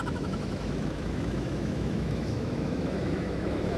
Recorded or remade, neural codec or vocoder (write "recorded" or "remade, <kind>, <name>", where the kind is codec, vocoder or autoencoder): remade, autoencoder, DAC-VAE